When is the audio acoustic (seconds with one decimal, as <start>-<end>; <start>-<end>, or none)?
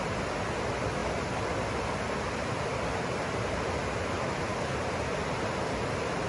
0.0-6.3